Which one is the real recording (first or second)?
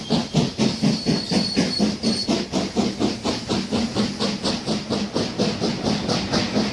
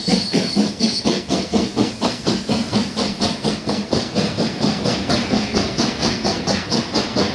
first